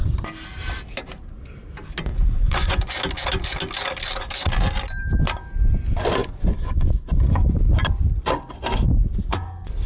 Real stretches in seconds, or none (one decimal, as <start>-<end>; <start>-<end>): 0.0-2.1; 3.0-6.2; 7.6-9.9